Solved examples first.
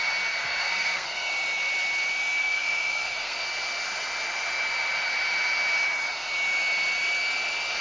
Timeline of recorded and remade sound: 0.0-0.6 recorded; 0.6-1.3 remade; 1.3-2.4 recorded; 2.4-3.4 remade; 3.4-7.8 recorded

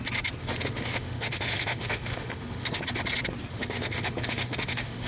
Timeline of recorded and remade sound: 0.0-0.4 recorded; 0.4-2.8 remade; 2.8-3.5 recorded; 3.5-5.1 remade

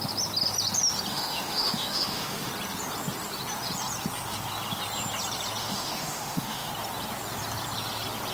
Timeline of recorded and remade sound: 0.0-1.1 recorded; 1.1-2.5 remade; 2.5-5.6 recorded; 5.6-6.7 remade; 6.7-8.3 recorded

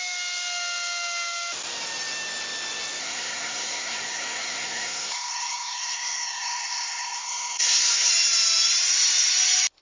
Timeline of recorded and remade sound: 0.0-3.0 recorded; 3.0-8.1 remade; 8.1-9.8 recorded